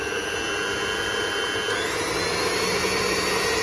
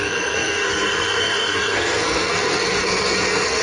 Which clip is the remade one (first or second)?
second